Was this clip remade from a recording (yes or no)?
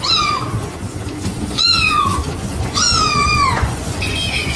yes